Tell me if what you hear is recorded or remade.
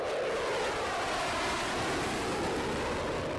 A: recorded